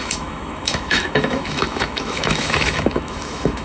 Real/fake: fake